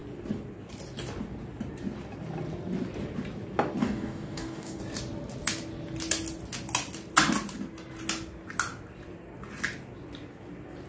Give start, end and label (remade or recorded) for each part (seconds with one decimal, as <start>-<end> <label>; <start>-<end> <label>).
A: 0.0-3.8 recorded; 3.8-4.8 remade; 4.8-10.9 recorded